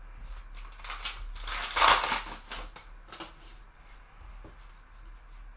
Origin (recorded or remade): recorded